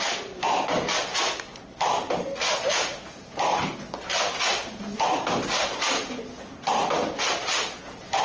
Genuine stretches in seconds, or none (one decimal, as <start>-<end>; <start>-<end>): 0.0-8.2